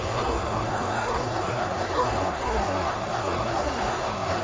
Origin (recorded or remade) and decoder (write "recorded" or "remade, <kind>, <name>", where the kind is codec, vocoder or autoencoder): remade, codec, SNAC